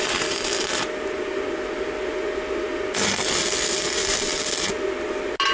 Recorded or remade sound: recorded